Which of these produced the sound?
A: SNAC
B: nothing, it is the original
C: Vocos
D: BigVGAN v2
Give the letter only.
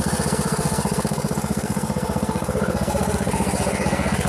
A